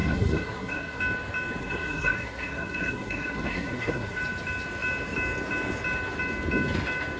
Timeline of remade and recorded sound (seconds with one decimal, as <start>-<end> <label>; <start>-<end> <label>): 0.0-1.0 remade; 1.0-1.6 recorded; 1.6-4.2 remade; 4.2-7.2 recorded